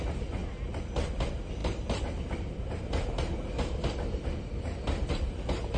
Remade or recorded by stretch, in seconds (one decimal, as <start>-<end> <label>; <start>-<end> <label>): 0.0-5.8 recorded